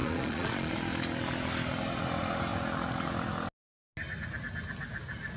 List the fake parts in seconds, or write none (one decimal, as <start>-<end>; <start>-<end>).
0.0-0.7